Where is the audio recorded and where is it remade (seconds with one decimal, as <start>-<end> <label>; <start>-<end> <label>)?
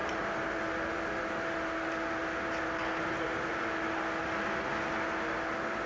0.0-5.9 recorded